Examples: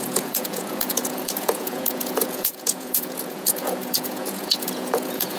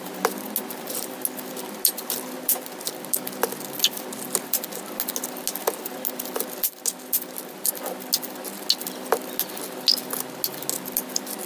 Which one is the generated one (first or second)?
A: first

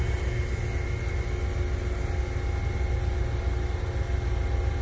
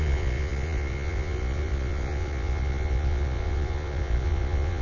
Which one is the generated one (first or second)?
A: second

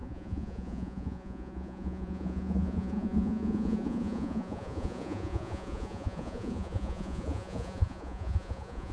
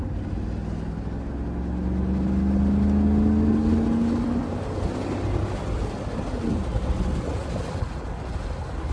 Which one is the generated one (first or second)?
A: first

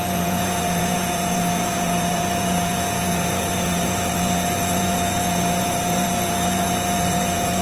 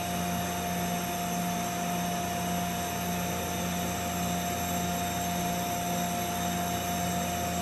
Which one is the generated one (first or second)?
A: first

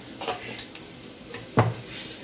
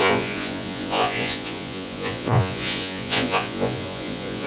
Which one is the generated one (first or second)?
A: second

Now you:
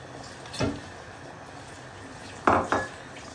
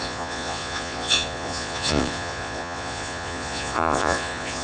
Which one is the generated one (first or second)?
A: second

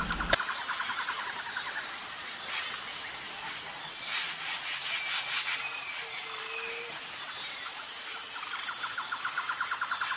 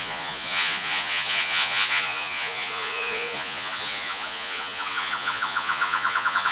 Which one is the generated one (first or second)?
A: second